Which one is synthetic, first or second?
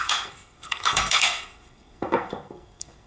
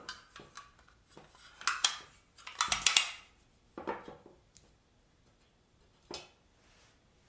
first